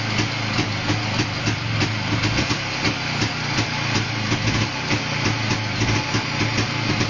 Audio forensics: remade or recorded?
recorded